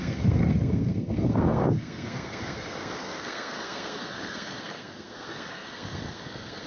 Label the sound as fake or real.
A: fake